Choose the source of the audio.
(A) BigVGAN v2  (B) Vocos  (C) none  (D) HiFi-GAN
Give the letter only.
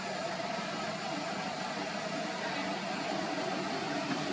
C